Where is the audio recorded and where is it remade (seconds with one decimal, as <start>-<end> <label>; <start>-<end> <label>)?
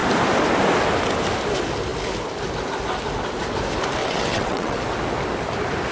0.0-4.0 recorded; 4.0-4.8 remade; 4.8-5.9 recorded